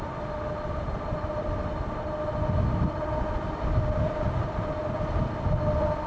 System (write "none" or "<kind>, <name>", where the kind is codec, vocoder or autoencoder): none